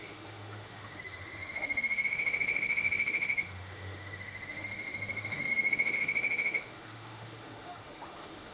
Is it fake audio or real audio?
fake